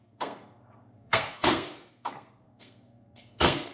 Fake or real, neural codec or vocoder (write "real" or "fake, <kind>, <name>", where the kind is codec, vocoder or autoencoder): fake, codec, SNAC